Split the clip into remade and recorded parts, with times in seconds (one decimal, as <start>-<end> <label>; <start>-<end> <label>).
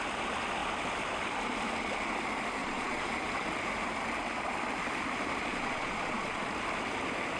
0.0-2.6 recorded; 2.6-3.1 remade; 3.1-5.5 recorded; 5.5-6.5 remade; 6.5-7.4 recorded